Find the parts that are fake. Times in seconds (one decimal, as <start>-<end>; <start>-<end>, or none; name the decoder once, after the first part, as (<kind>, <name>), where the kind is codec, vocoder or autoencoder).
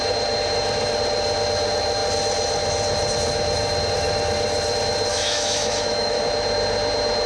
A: 5.1-6.2 (autoencoder, DAC-VAE)